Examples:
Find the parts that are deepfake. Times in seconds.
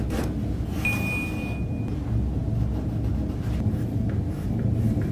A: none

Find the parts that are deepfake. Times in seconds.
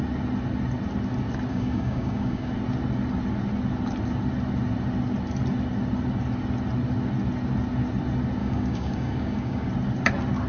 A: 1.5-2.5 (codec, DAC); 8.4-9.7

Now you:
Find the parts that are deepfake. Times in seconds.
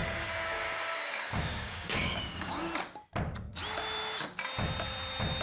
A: 0.0-2.7 (codec, DAC)